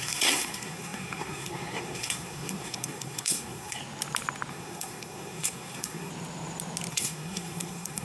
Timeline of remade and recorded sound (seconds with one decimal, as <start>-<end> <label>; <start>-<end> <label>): 0.0-3.8 remade; 3.8-4.5 recorded; 4.5-6.1 remade; 6.1-6.9 recorded; 6.9-8.0 remade